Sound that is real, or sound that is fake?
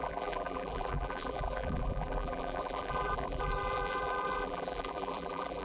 fake